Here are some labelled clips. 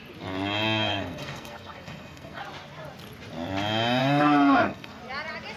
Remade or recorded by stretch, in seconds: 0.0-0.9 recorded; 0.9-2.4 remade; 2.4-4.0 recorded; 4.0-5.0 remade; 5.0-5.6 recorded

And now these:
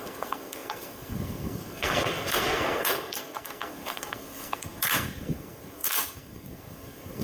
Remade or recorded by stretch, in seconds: 0.0-7.2 remade

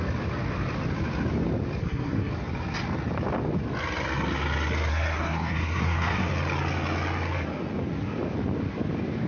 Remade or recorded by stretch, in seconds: 0.0-1.8 recorded; 1.8-2.3 remade; 2.3-4.9 recorded; 4.9-6.3 remade; 6.3-9.3 recorded

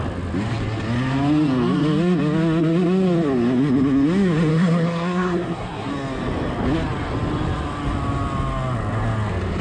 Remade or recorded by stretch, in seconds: 0.0-4.5 recorded; 4.5-5.9 remade; 5.9-9.6 recorded

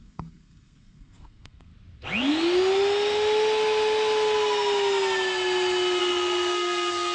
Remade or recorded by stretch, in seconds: 0.0-1.7 remade; 1.7-6.0 recorded; 6.0-7.1 remade

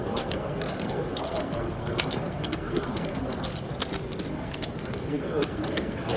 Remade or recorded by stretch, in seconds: 0.0-3.7 remade; 3.7-4.3 recorded; 4.3-6.2 remade